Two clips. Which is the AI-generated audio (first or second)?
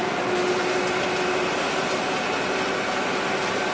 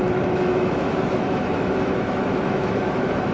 second